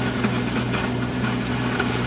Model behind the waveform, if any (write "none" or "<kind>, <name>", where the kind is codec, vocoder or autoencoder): none